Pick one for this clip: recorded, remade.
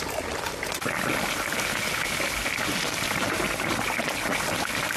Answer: recorded